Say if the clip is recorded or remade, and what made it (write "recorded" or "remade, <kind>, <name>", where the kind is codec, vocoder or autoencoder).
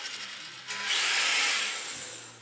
recorded